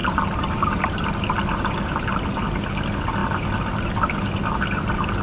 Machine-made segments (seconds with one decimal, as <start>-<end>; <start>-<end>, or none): none